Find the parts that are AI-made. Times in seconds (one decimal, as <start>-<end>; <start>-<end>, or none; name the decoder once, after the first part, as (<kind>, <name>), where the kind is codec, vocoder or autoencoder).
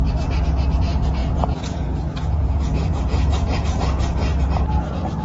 1.2-3.8 (vocoder, Vocos)